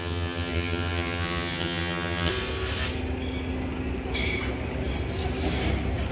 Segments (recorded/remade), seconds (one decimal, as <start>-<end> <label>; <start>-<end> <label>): 0.0-2.3 remade; 2.3-6.1 recorded